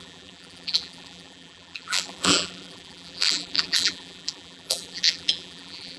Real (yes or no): no